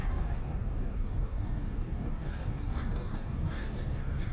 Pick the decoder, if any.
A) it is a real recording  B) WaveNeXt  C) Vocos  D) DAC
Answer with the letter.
D